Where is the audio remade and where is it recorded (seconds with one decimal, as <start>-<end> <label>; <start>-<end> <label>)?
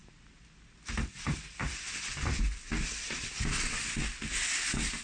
0.0-5.0 recorded